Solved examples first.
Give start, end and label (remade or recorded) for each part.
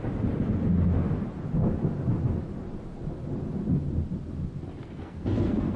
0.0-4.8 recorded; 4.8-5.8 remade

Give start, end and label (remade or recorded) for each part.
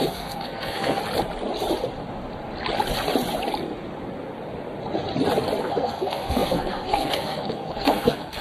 0.0-1.0 remade; 1.0-5.6 recorded; 5.6-8.4 remade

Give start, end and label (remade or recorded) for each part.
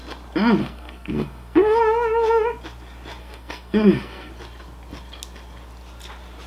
0.0-0.6 recorded; 0.6-1.8 remade; 1.8-3.2 recorded; 3.2-4.3 remade; 4.3-6.5 recorded